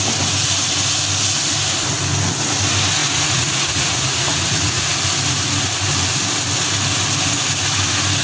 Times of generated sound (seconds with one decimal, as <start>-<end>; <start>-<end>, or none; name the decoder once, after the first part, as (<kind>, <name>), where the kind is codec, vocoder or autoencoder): 3.0-5.0 (vocoder, Vocos)